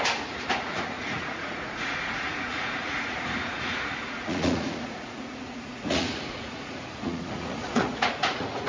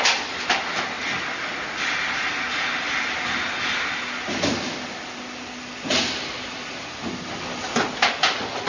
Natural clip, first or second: second